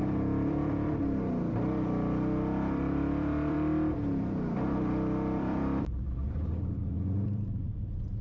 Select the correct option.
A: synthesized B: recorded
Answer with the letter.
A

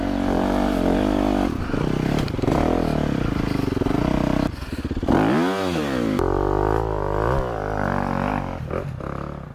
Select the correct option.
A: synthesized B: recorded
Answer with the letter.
B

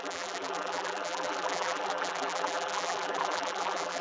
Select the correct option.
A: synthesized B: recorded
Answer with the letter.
A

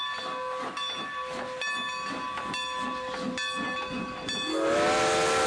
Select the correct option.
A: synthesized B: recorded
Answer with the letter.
B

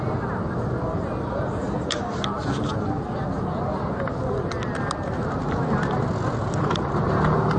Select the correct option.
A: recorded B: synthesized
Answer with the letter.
A